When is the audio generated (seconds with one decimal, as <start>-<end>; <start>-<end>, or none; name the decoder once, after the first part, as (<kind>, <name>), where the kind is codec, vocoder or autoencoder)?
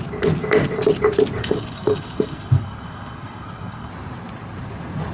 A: 1.4-3.9 (codec, SNAC)